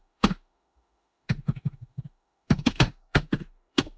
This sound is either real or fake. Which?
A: fake